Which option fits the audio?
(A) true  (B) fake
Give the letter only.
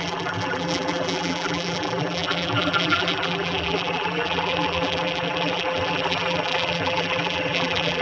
B